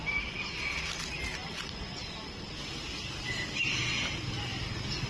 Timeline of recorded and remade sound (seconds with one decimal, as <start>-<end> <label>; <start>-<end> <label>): 0.0-5.1 recorded

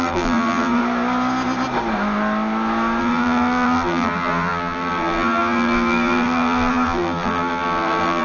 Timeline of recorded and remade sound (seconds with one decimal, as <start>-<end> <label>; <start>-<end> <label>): 0.0-0.8 remade; 0.8-3.0 recorded; 3.0-8.2 remade

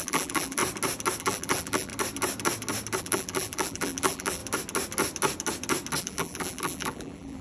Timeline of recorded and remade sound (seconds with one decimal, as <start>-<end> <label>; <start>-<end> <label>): 0.0-0.6 remade; 0.6-1.2 recorded; 1.2-1.9 remade; 1.9-3.0 recorded; 3.0-4.4 remade; 4.4-6.0 recorded; 6.0-7.4 remade

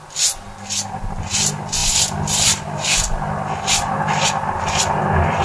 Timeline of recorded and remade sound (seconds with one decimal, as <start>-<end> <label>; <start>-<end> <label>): 0.0-1.8 recorded; 1.8-5.0 remade; 5.0-5.4 recorded

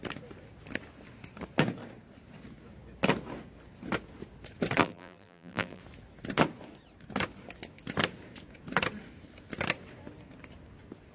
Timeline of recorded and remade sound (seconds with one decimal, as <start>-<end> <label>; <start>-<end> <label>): 0.0-4.8 recorded; 4.8-5.8 remade; 5.8-11.1 recorded

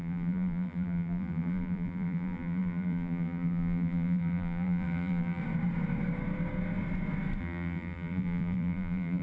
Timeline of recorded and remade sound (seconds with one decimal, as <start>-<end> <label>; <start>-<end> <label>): 0.0-5.4 remade; 5.4-7.4 recorded; 7.4-9.2 remade

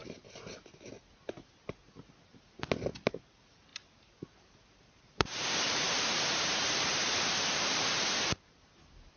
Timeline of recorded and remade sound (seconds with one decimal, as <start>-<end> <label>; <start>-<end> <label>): 0.0-3.7 recorded; 3.7-8.5 remade; 8.5-9.2 recorded